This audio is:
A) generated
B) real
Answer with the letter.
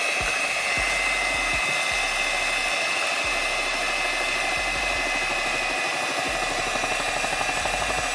B